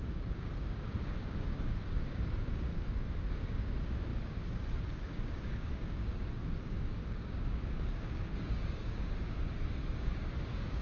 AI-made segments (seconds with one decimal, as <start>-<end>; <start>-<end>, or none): 0.0-2.7; 3.3-10.8